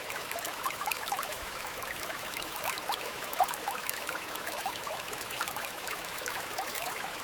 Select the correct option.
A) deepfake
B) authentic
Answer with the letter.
A